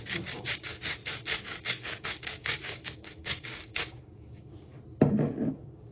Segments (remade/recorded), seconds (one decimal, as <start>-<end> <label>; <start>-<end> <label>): 0.0-4.7 remade; 4.7-5.5 recorded; 5.5-5.9 remade